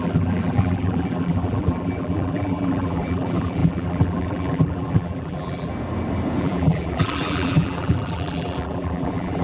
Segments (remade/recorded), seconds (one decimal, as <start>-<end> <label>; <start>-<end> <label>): 0.0-5.7 remade; 5.7-6.4 recorded; 6.4-9.4 remade